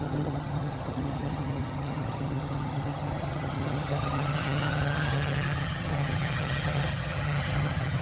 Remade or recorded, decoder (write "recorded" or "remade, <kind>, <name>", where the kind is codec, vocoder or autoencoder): remade, vocoder, HiFi-GAN